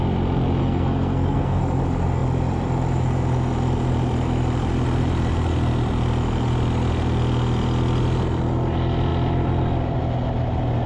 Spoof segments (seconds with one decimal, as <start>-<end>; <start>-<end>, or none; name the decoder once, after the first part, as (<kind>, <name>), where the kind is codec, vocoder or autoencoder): 0.6-1.6 (codec, SNAC)